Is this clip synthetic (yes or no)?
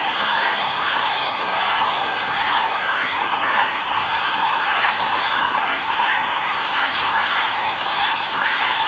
yes